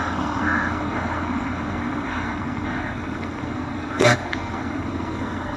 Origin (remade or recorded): remade